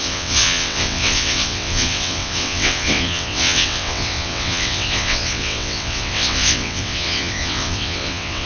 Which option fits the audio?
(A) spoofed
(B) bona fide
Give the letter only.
A